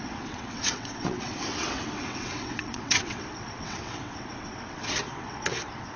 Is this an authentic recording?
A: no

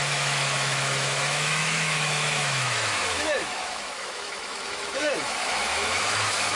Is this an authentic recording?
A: no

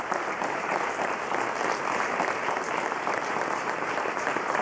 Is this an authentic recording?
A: no